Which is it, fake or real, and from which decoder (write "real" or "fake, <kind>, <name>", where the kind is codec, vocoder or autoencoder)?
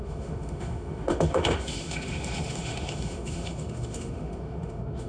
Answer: fake, autoencoder, DAC-VAE